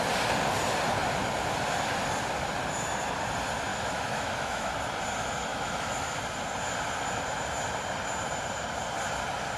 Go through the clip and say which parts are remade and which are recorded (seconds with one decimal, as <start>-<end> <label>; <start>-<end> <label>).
0.0-3.7 recorded; 3.7-4.7 remade; 4.7-5.5 recorded; 5.5-6.2 remade; 6.2-9.6 recorded